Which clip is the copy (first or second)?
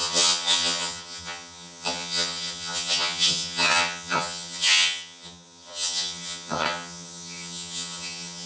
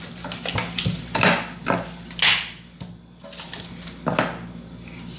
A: first